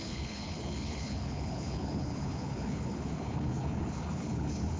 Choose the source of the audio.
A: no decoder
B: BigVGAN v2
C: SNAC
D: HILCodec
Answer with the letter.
D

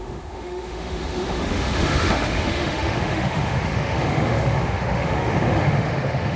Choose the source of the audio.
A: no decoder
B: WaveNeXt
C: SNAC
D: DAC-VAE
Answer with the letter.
D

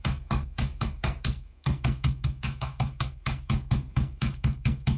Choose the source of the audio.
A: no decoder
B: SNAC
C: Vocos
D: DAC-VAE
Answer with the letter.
B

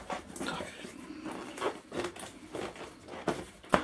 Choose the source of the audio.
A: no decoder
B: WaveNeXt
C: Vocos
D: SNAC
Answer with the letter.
A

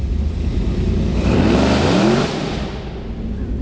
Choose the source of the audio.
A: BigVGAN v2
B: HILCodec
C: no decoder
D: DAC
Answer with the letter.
A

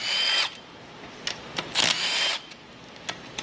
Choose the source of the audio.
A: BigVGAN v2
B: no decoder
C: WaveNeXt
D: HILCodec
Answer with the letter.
B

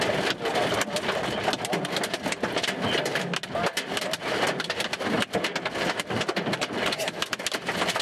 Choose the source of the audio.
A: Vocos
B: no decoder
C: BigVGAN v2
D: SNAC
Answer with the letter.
B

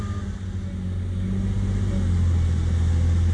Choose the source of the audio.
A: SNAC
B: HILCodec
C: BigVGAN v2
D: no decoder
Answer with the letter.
D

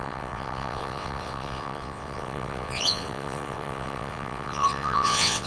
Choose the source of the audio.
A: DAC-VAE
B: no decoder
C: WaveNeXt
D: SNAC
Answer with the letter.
C